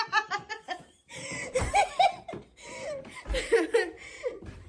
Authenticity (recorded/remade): remade